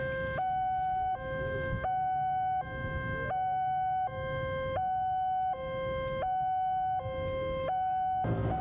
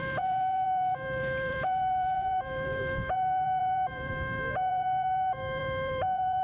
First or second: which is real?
first